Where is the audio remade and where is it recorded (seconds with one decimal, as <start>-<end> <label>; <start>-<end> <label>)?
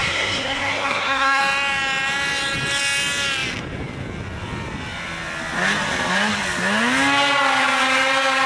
0.0-1.4 remade; 1.4-8.5 recorded